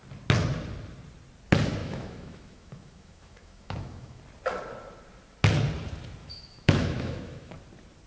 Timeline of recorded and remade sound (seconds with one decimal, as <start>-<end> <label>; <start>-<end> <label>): 0.0-1.8 recorded; 1.8-4.2 remade; 4.2-6.2 recorded; 6.2-7.6 remade; 7.6-8.1 recorded